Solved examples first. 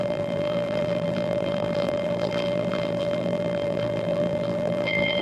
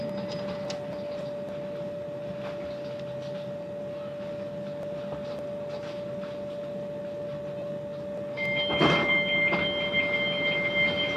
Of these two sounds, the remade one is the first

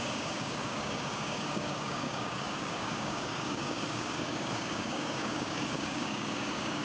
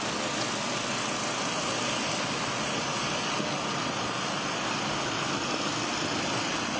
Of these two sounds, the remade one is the first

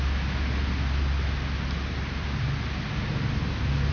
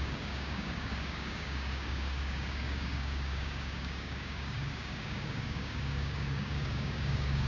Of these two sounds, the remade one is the second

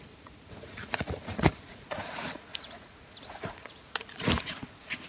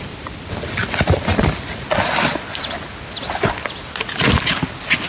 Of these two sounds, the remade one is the first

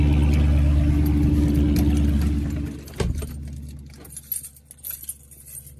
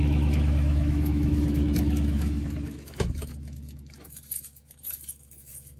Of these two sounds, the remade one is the second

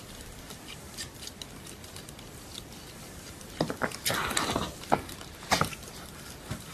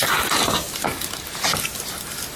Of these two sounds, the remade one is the first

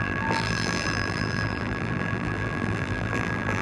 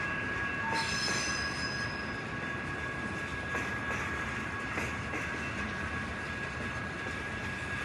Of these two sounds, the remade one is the first